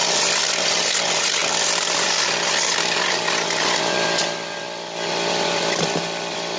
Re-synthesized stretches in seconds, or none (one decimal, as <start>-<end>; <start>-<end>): none